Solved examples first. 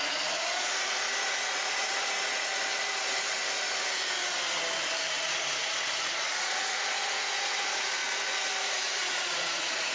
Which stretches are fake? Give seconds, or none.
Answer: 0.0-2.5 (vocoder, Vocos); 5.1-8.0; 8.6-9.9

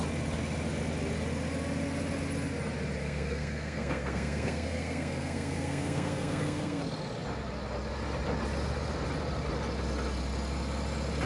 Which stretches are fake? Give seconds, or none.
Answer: 3.0-6.8 (codec, SNAC)